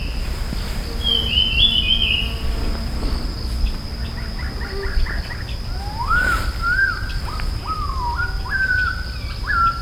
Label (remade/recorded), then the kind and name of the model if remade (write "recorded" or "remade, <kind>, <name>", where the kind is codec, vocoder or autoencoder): recorded